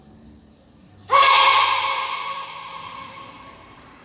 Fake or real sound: fake